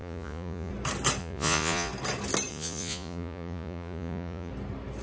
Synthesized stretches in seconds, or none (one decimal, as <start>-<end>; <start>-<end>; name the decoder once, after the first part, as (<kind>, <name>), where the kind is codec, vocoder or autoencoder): 0.0-0.7 (vocoder, Vocos); 1.2-1.9; 2.5-4.5